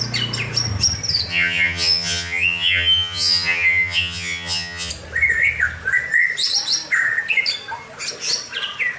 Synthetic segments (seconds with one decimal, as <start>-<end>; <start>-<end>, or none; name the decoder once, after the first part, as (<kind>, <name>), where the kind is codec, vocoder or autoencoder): 1.3-4.9 (vocoder, HiFi-GAN)

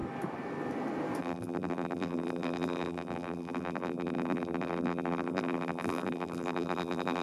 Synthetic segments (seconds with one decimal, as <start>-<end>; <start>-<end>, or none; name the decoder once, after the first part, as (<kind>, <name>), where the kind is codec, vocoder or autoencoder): 1.2-7.2 (vocoder, BigVGAN v2)

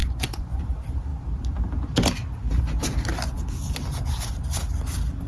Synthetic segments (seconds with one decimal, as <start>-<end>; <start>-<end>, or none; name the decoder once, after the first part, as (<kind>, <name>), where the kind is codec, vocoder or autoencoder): 0.0-0.6 (vocoder, Vocos)

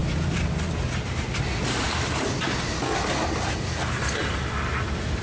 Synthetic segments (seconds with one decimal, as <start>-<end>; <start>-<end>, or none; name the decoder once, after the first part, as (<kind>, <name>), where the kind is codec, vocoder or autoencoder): none